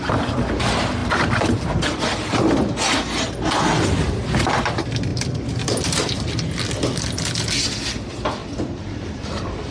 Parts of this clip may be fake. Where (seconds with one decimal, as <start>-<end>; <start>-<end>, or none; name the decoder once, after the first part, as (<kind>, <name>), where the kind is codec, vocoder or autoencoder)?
8.4-9.7 (vocoder, BigVGAN v2)